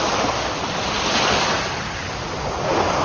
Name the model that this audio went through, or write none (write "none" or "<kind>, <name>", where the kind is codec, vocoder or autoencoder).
none